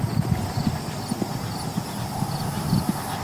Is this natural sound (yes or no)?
yes